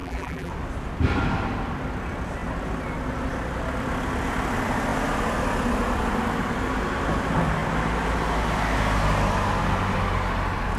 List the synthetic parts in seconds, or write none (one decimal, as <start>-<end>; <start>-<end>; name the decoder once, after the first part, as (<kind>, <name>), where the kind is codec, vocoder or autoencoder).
0.0-0.5 (vocoder, BigVGAN v2)

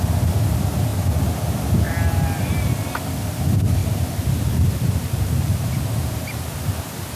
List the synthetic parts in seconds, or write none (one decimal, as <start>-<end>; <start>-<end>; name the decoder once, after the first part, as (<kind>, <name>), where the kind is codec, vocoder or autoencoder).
3.8-5.8 (vocoder, BigVGAN v2)

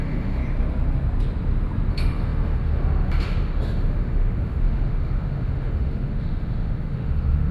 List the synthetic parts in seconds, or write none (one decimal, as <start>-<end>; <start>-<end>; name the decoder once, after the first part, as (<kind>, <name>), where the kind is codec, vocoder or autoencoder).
0.0-0.4 (autoencoder, DAC-VAE); 1.9-7.5

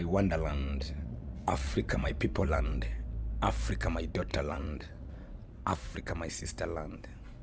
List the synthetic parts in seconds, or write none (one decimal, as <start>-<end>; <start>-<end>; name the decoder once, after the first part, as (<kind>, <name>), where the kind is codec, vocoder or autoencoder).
0.5-2.6 (vocoder, Vocos); 4.3-6.0

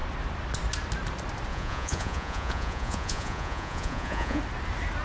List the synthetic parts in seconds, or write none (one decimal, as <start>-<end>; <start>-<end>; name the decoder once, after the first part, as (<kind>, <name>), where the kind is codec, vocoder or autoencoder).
1.5-4.4 (vocoder, Vocos)

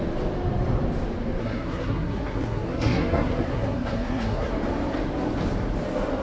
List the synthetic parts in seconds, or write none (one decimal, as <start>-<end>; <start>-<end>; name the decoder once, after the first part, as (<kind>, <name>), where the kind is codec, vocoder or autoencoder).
1.4-4.5 (codec, SNAC)